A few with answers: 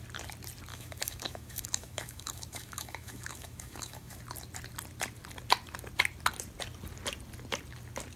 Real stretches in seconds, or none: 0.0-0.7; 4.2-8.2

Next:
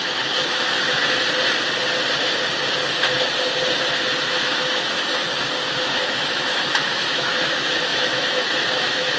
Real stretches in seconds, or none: 1.0-4.3

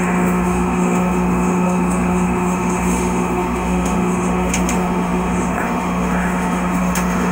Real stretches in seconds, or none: none

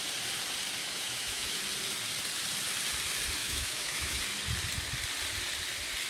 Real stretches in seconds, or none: 0.0-0.8; 1.6-3.4; 4.2-6.1